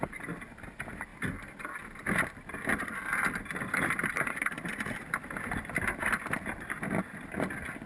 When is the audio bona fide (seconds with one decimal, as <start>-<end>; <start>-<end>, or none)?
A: 0.0-2.7; 7.1-7.9